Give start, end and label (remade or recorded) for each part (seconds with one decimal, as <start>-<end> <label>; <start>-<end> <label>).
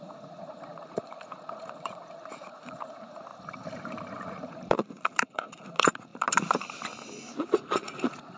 0.0-3.3 remade; 3.3-4.3 recorded; 4.3-6.1 remade; 6.1-7.4 recorded; 7.4-8.4 remade